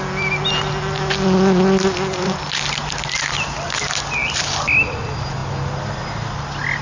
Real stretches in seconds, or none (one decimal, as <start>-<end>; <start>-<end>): 0.0-6.8